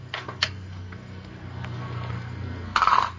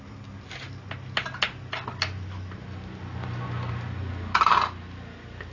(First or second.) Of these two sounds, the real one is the second